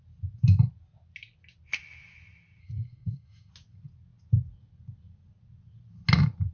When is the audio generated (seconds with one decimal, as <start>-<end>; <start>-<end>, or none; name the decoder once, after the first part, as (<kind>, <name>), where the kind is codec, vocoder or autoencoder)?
2.6-3.5 (codec, SNAC)